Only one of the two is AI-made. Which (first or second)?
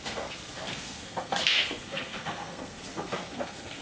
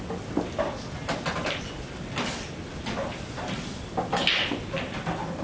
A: first